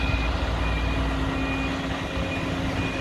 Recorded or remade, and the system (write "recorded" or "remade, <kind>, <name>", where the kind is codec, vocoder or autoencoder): recorded